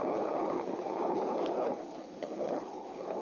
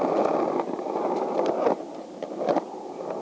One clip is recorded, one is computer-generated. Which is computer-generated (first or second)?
first